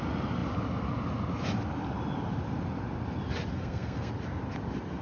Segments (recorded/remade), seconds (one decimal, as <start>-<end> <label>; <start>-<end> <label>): 0.0-3.5 recorded; 3.5-4.1 remade; 4.1-5.0 recorded